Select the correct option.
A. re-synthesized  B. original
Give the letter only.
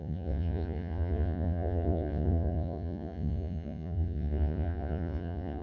A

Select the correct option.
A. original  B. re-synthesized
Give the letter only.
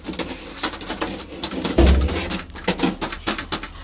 A